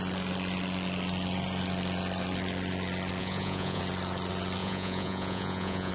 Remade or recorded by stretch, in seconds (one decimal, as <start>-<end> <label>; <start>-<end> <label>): 0.0-3.2 recorded; 3.2-3.8 remade; 3.8-4.6 recorded; 4.6-5.9 remade